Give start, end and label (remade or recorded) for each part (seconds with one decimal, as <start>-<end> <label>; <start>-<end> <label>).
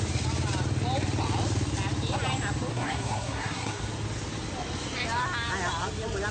0.0-2.7 recorded; 2.7-3.8 remade; 3.8-6.3 recorded